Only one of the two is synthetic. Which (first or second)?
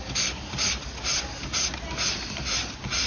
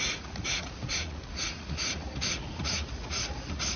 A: second